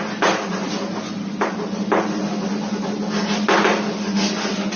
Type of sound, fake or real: real